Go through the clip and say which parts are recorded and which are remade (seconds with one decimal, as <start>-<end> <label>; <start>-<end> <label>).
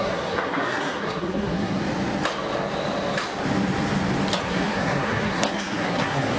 0.0-1.8 remade; 1.8-4.4 recorded; 4.4-6.4 remade